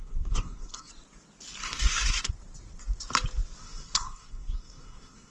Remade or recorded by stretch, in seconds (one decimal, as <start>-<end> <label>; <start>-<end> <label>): 0.0-0.9 remade; 0.9-1.6 recorded; 1.6-2.3 remade; 2.3-3.6 recorded; 3.6-5.3 remade

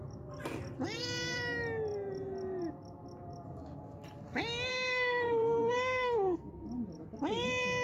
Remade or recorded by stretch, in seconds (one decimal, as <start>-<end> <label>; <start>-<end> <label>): 0.0-4.7 recorded; 4.7-6.5 remade; 6.5-7.8 recorded

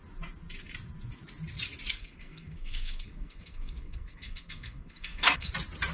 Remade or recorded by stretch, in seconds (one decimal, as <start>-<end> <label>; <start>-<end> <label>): 0.0-2.0 recorded; 2.0-5.5 remade; 5.5-5.9 recorded

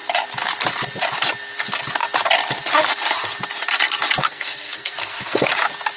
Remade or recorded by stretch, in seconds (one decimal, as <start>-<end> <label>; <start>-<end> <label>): 0.0-4.2 recorded; 4.2-5.5 remade; 5.5-6.0 recorded

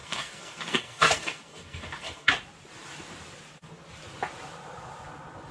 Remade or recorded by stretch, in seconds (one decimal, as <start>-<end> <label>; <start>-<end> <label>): 0.0-2.3 remade; 2.3-5.5 recorded

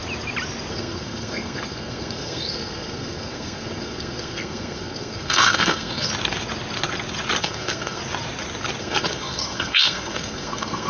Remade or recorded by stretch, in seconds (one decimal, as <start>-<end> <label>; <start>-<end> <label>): 0.0-0.7 recorded; 0.7-6.1 remade; 6.1-7.4 recorded; 7.4-8.0 remade; 8.0-8.8 recorded; 8.8-10.9 remade